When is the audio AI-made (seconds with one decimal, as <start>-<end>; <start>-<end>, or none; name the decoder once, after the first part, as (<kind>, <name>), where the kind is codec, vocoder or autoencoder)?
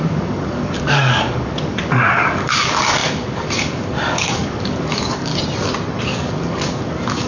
0.0-5.3 (codec, DAC); 6.0-7.3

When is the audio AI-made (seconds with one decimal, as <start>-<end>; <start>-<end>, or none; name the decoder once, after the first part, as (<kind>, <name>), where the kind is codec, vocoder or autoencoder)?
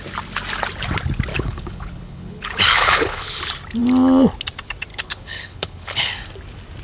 1.3-3.4 (codec, HILCodec); 4.9-6.1